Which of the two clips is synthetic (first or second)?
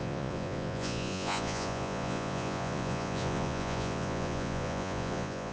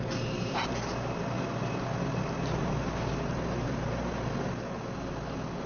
first